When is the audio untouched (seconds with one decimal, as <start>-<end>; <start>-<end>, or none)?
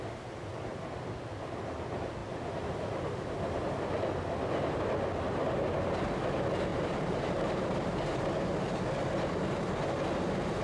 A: 0.0-0.7; 1.6-6.7; 7.9-10.6